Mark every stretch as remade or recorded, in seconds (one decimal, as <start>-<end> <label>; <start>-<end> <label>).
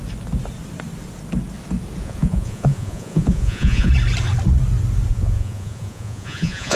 0.0-2.0 recorded; 2.0-3.9 remade; 3.9-5.1 recorded; 5.1-6.8 remade